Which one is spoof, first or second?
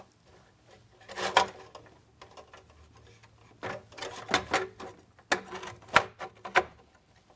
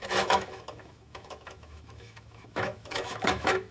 second